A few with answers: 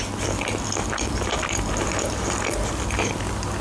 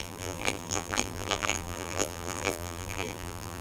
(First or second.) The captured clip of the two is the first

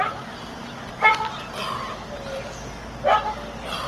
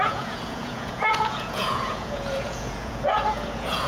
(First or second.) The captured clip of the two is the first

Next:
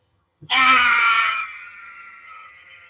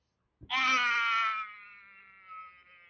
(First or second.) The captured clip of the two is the second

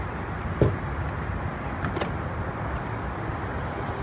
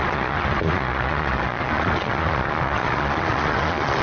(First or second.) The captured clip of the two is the first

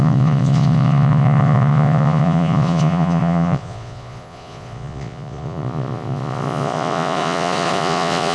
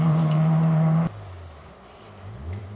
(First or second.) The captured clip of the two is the second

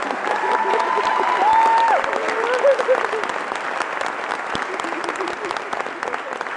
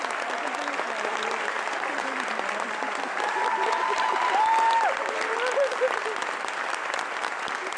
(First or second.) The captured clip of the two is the first